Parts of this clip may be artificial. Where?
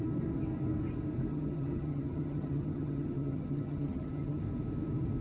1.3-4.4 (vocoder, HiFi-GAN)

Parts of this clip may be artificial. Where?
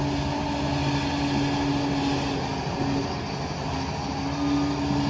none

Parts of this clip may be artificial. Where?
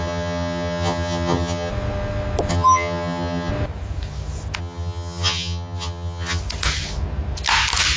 0.0-1.7 (vocoder, HiFi-GAN); 2.5-3.5; 4.6-6.4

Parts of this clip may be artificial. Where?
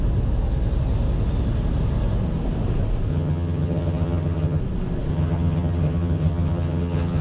3.1-4.6 (vocoder, HiFi-GAN); 5.1-7.2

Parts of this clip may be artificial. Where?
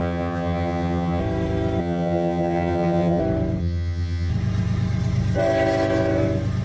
0.0-1.2 (vocoder, HiFi-GAN); 1.8-3.2; 3.6-4.3